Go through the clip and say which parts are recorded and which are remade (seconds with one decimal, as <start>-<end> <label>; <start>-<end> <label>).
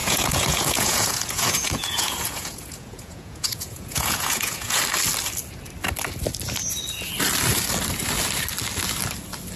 0.0-4.8 remade; 4.8-9.6 recorded